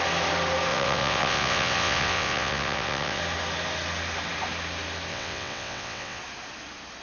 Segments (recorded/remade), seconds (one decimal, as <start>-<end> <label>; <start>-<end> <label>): 0.0-0.7 recorded; 0.7-3.2 remade; 3.2-5.1 recorded; 5.1-6.2 remade; 6.2-7.0 recorded